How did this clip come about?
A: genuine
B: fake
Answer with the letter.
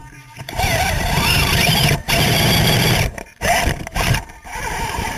B